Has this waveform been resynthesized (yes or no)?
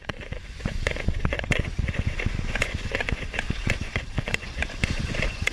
yes